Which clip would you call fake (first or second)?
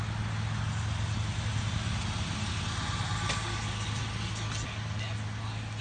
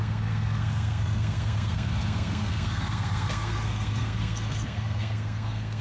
second